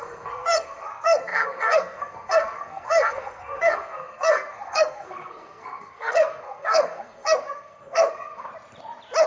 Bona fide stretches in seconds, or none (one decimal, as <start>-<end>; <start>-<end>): 8.5-9.3